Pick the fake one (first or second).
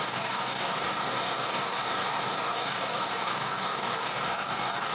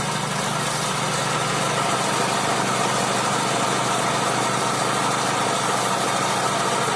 first